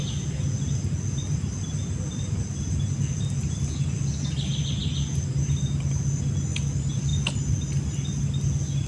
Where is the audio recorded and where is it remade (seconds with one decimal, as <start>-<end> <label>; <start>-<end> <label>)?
0.0-8.9 recorded